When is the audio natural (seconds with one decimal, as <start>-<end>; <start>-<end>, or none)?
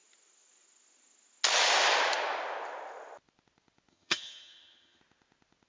0.0-3.9; 5.0-5.7